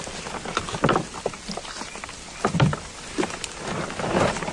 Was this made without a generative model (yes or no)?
no